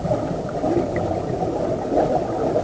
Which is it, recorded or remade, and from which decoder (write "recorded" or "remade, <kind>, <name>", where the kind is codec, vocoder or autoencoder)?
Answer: recorded